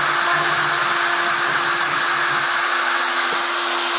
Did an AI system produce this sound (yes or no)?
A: no